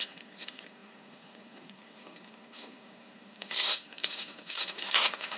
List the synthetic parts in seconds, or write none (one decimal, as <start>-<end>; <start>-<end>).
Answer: 0.0-5.4